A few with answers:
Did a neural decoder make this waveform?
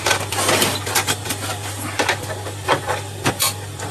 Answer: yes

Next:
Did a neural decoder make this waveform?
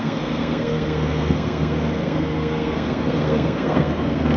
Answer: yes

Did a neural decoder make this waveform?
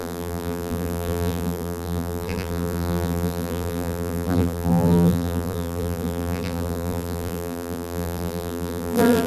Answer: yes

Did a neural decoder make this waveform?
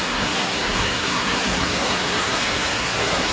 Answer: yes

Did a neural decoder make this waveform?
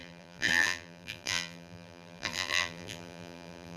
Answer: yes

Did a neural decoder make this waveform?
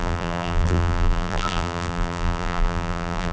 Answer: yes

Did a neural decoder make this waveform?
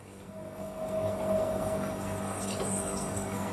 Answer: yes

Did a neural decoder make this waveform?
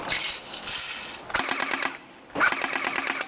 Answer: no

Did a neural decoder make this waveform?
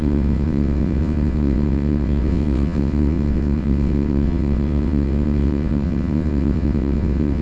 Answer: yes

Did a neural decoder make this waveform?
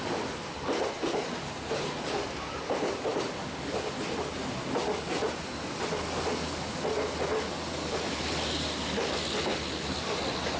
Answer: no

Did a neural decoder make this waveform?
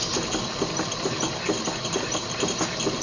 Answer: no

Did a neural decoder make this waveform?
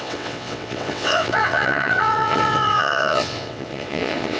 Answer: yes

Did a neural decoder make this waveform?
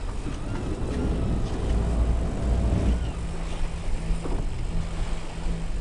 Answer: no